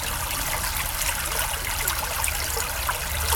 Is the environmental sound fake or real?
real